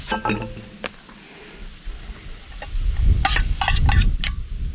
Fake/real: real